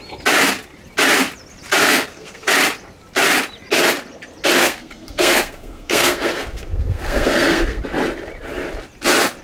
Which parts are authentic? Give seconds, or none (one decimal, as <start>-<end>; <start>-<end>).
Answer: 0.0-1.8; 2.5-4.6; 7.8-9.4